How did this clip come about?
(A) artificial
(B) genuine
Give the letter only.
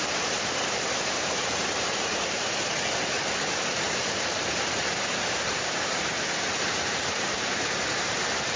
A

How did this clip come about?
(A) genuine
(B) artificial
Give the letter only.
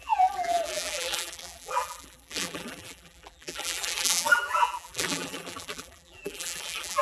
B